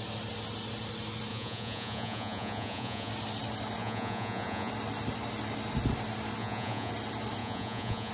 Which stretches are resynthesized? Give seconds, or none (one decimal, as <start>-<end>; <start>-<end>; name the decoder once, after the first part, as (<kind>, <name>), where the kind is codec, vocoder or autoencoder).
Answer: 1.3-3.1 (vocoder, Vocos); 3.8-4.7; 6.4-6.9; 7.4-8.1

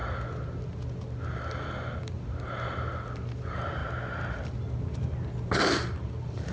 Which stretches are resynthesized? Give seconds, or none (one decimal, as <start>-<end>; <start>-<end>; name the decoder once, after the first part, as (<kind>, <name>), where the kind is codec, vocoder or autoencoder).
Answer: none